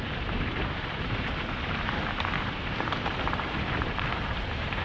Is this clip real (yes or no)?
no